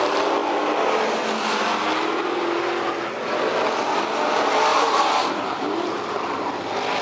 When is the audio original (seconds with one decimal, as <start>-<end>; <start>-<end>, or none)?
0.0-4.7; 6.5-7.0